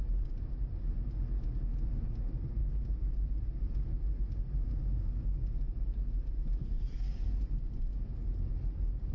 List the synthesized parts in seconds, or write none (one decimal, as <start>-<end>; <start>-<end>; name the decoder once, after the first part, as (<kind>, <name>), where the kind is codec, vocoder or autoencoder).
none